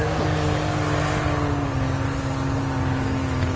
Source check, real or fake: real